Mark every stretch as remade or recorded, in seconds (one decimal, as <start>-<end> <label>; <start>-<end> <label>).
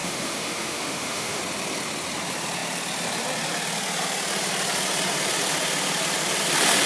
0.0-1.4 remade; 1.4-6.9 recorded